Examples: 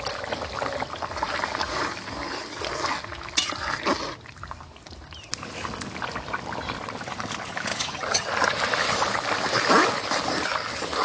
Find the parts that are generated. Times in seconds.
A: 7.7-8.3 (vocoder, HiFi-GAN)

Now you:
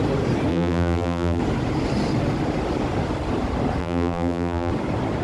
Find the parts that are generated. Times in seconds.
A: 0.5-1.4 (vocoder, BigVGAN v2); 3.8-4.7